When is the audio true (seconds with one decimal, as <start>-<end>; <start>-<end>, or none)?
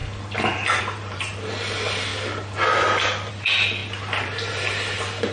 0.0-0.8; 2.1-3.3